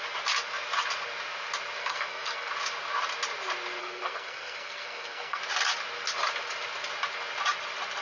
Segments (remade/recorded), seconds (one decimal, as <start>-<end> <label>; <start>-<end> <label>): 0.0-1.8 recorded; 1.8-2.5 remade; 2.5-3.8 recorded; 3.8-5.4 remade; 5.4-8.0 recorded

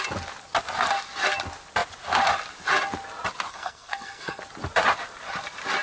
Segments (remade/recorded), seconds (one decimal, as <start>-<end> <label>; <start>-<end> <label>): 0.0-3.5 recorded; 3.5-4.4 remade; 4.4-5.8 recorded

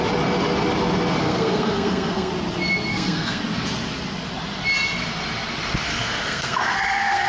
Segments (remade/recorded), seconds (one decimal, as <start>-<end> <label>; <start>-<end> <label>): 0.0-1.2 recorded; 1.2-2.3 remade; 2.3-2.9 recorded; 2.9-3.4 remade; 3.4-5.9 recorded; 5.9-7.3 remade

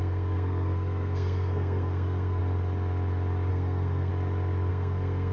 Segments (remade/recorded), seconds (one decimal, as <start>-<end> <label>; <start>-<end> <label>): 0.0-2.4 remade; 2.4-3.5 recorded; 3.5-4.1 remade; 4.1-4.7 recorded; 4.7-5.3 remade